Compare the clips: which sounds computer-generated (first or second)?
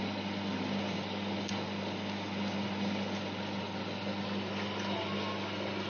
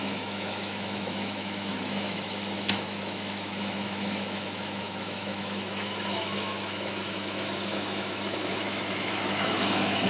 second